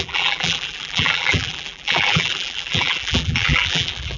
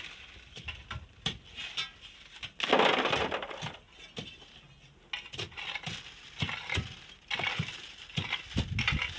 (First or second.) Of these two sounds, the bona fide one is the second